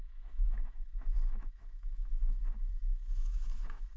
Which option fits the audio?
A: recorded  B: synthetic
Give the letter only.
B